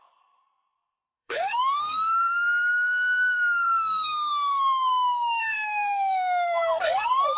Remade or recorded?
remade